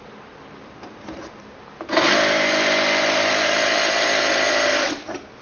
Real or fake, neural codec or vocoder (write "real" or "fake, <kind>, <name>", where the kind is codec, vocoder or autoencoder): real